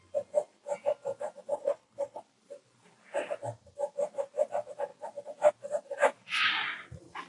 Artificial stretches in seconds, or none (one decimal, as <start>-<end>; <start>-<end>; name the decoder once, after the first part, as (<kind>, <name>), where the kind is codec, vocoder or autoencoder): 1.5-2.2 (codec, HILCodec)